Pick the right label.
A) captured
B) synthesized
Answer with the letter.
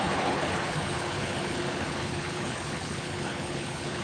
B